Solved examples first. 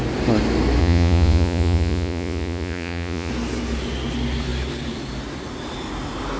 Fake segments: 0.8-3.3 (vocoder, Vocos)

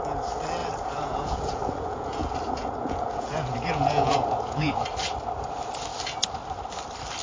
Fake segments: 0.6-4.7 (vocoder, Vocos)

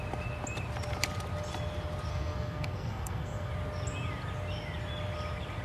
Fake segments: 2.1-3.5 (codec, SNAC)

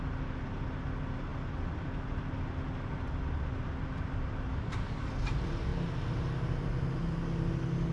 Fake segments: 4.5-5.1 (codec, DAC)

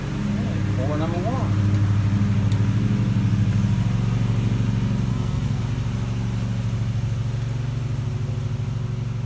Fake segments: 5.1-5.6 (codec, SNAC)

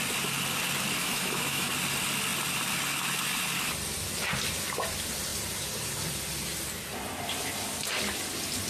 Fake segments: 1.0-1.7 (autoencoder, DAC-VAE)